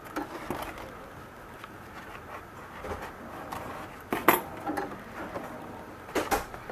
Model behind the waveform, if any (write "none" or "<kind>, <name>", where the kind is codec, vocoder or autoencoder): none